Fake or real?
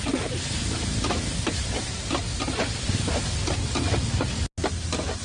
real